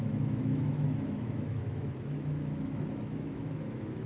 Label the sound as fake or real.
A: fake